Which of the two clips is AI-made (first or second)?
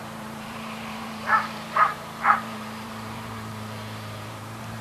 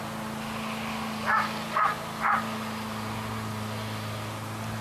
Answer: first